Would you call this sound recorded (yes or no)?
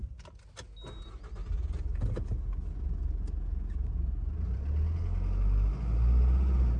yes